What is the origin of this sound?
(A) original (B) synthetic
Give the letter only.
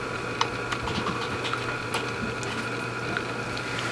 A